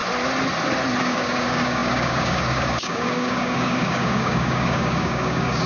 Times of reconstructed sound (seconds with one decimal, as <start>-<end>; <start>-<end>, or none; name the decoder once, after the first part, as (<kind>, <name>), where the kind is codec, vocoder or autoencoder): 1.0-5.7 (codec, DAC)